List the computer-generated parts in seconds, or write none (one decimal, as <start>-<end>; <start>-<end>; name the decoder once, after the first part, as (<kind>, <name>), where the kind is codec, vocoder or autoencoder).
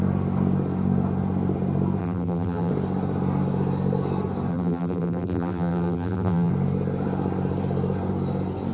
2.0-2.7 (vocoder, BigVGAN v2); 4.5-6.5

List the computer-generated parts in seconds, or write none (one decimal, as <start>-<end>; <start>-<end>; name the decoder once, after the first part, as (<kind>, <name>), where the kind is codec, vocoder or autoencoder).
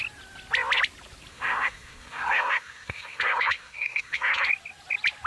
1.3-4.5 (codec, SNAC)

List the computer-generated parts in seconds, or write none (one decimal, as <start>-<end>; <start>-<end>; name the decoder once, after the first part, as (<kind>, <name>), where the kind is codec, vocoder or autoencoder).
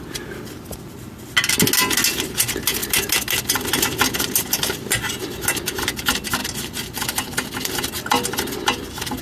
none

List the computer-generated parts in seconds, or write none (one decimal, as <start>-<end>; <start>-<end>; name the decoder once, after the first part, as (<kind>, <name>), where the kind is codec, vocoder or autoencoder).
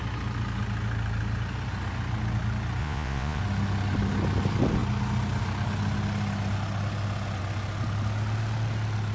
2.8-3.4 (vocoder, Vocos)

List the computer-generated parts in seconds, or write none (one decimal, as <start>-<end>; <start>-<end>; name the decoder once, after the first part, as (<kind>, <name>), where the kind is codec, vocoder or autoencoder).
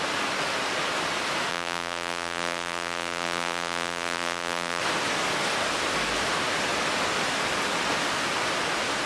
1.5-4.8 (vocoder, BigVGAN v2)